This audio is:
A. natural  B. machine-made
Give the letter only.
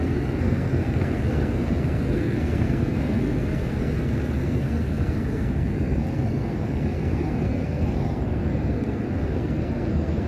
B